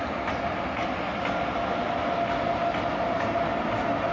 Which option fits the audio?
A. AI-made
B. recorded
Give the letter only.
B